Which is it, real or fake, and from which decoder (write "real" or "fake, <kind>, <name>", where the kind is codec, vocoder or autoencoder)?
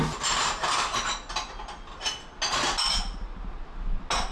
real